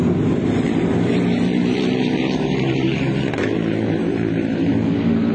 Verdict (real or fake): fake